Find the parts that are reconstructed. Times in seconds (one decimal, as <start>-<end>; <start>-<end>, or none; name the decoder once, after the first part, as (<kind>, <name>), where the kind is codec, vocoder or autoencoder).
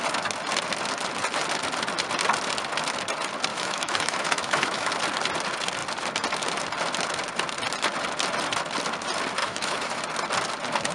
3.5-4.9 (autoencoder, DAC-VAE); 9.4-10.0